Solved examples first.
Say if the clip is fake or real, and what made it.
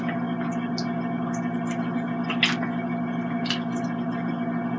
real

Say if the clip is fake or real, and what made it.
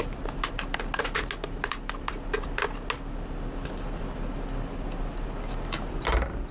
real